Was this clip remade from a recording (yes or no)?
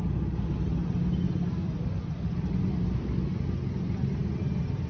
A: no